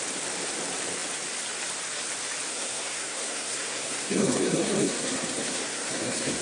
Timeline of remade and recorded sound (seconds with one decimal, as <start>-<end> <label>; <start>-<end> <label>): 0.0-2.5 recorded; 2.5-6.4 remade